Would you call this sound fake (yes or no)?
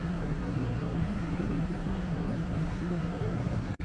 yes